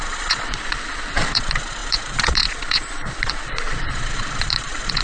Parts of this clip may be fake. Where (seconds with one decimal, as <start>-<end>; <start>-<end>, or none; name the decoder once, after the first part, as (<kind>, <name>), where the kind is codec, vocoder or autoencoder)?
0.0-5.0 (vocoder, Vocos)